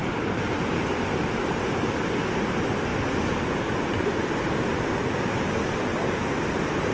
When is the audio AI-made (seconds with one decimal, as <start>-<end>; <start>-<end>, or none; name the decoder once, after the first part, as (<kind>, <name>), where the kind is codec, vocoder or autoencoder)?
none